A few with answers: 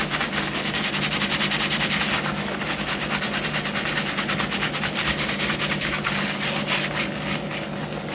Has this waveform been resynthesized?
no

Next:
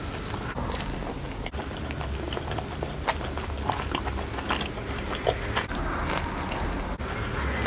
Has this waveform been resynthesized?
no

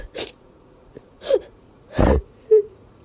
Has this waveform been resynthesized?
yes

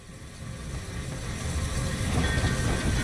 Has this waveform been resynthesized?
no